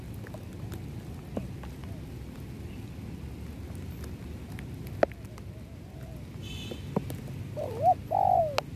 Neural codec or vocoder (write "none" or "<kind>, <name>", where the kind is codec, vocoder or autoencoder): none